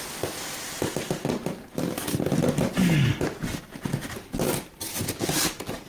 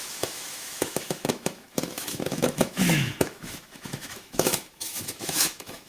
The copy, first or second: second